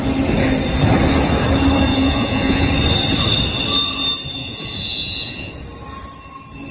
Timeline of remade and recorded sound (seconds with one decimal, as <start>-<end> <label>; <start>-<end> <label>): 0.0-1.9 recorded; 1.9-2.7 remade; 2.7-4.4 recorded; 4.4-5.5 remade; 5.5-6.7 recorded

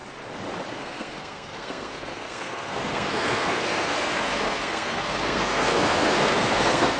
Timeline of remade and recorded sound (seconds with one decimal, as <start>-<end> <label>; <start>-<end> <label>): 0.0-0.7 recorded; 0.7-7.0 remade